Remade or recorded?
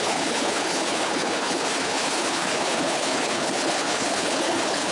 remade